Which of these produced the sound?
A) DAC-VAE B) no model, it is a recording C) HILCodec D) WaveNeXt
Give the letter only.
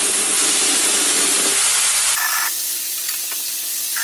B